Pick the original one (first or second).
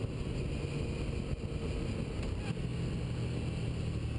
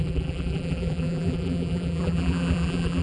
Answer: first